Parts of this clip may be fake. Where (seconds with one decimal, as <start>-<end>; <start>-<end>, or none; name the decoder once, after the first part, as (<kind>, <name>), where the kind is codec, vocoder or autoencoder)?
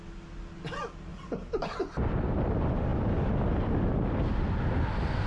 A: 1.1-2.3 (vocoder, BigVGAN v2)